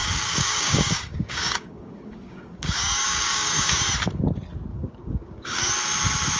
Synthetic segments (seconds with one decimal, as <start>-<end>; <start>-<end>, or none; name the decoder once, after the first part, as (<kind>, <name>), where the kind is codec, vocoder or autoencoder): 0.0-3.8 (codec, DAC); 4.7-5.7